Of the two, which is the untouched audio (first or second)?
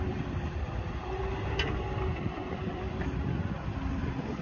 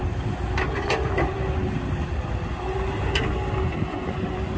second